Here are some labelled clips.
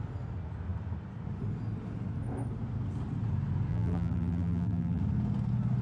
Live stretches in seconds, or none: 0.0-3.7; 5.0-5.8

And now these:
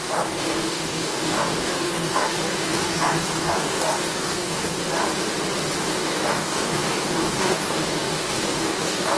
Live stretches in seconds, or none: 4.8-5.8

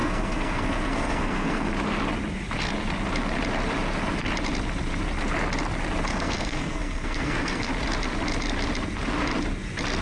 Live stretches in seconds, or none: 1.7-6.1; 7.7-10.0

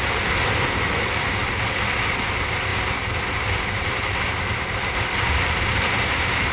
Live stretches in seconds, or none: 0.0-6.5